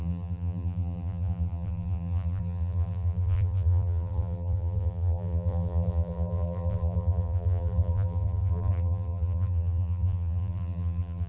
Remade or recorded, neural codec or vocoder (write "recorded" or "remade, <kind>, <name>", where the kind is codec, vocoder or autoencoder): remade, vocoder, BigVGAN v2